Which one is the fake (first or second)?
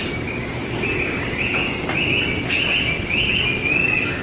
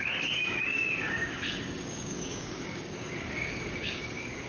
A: second